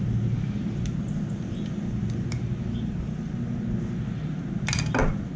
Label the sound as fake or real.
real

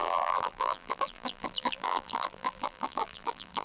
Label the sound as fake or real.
fake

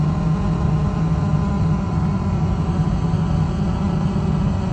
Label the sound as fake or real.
real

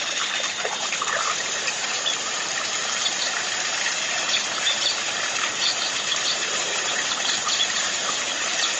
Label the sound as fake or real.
fake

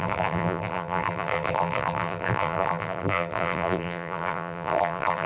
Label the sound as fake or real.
fake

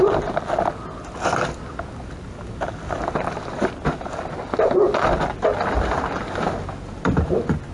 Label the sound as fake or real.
real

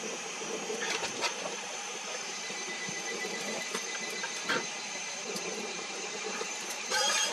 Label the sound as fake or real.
fake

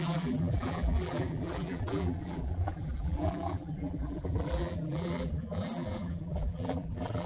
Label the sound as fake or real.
fake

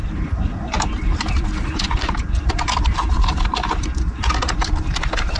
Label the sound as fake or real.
fake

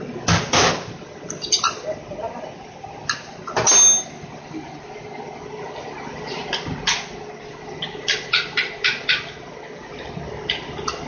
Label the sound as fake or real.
real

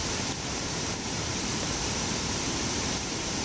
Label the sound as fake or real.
fake